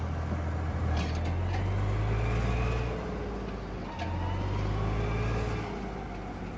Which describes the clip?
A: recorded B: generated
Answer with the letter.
A